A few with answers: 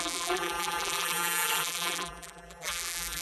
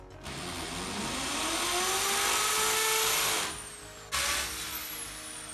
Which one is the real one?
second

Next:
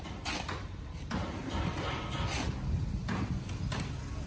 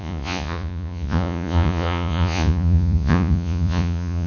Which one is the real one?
first